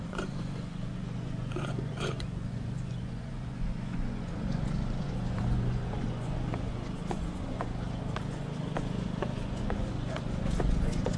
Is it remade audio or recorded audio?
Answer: remade